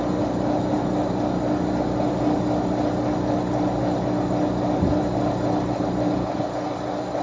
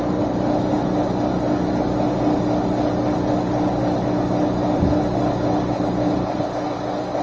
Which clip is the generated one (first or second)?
first